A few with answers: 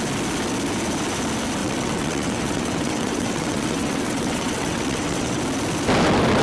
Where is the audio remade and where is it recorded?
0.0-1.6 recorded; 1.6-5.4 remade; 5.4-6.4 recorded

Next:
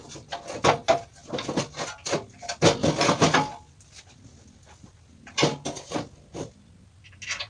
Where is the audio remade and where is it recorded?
0.0-7.5 recorded

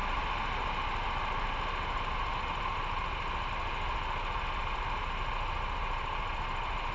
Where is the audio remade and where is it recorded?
0.0-6.9 recorded

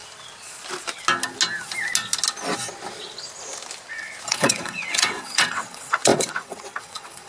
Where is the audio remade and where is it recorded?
0.0-4.3 recorded; 4.3-7.3 remade

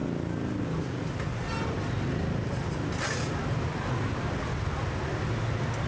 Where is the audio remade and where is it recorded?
0.0-5.9 recorded

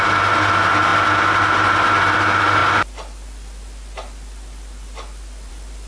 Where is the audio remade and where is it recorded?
0.0-5.9 recorded

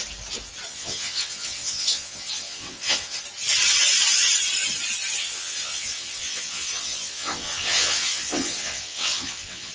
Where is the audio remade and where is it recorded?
0.0-0.7 recorded; 0.7-3.2 remade; 3.2-5.2 recorded; 5.2-9.7 remade